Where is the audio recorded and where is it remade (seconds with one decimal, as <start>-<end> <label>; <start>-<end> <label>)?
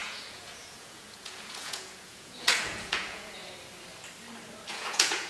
0.0-3.4 remade; 3.4-4.7 recorded; 4.7-5.3 remade